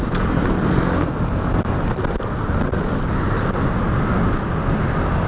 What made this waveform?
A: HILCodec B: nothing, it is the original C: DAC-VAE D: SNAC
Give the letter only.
B